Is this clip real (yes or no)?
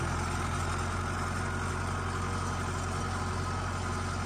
yes